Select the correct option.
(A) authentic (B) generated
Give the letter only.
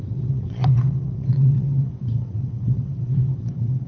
B